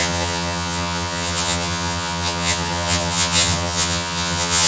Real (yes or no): no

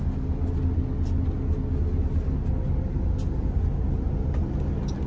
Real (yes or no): yes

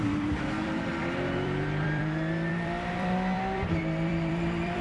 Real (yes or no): no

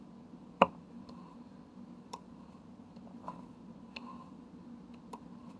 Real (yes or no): yes